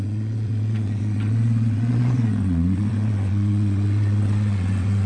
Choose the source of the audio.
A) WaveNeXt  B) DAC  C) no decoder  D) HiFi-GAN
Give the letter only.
A